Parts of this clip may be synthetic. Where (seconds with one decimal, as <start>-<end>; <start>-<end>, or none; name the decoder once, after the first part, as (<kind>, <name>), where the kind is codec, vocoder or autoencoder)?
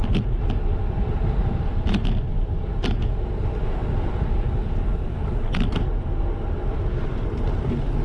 1.7-3.0 (vocoder, BigVGAN v2)